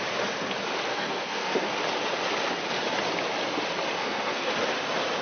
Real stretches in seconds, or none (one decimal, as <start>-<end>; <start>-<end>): 0.0-0.9; 1.7-4.0; 4.5-5.2